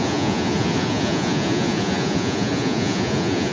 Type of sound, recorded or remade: remade